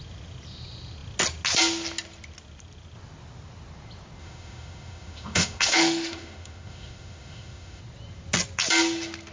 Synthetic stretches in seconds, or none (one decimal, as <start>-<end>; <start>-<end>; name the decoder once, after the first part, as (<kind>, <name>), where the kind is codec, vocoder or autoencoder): 4.2-7.8 (autoencoder, DAC-VAE)